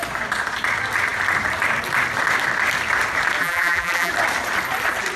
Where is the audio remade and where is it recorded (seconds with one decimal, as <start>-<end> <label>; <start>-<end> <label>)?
0.0-3.4 recorded; 3.4-4.1 remade; 4.1-5.2 recorded